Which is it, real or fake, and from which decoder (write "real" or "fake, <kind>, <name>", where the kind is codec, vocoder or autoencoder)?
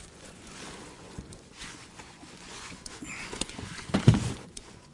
fake, vocoder, Vocos